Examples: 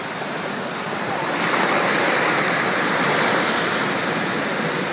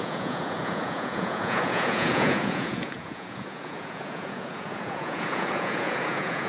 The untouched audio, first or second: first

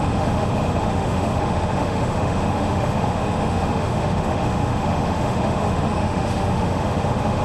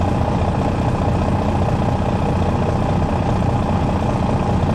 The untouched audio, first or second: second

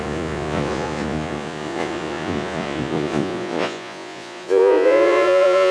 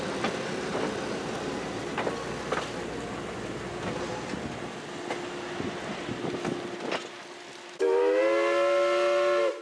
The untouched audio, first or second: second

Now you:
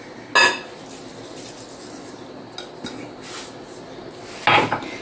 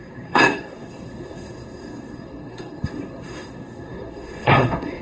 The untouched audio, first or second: first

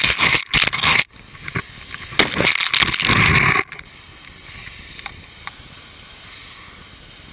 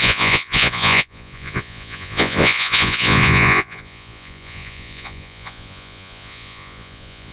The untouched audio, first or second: first